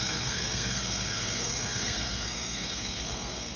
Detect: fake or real fake